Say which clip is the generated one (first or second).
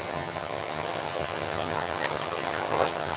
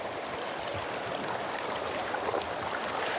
first